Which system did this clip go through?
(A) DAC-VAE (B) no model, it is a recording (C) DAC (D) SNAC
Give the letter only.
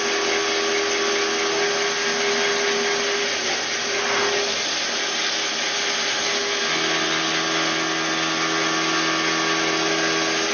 B